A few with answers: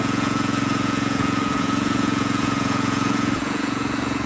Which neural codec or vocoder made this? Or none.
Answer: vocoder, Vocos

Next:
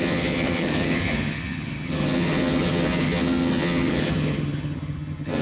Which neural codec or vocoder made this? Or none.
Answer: vocoder, HiFi-GAN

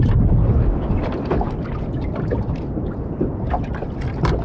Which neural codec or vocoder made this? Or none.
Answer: none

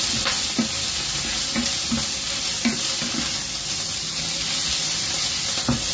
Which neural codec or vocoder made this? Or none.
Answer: none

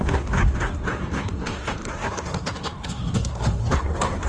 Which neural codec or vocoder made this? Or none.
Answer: codec, SNAC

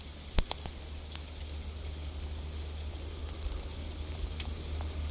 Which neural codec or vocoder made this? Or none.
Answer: none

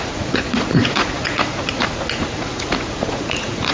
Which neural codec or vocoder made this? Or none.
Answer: vocoder, Vocos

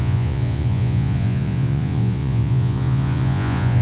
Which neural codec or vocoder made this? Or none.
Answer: vocoder, Vocos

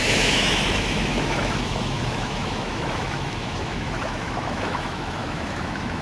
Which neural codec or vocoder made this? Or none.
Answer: autoencoder, DAC-VAE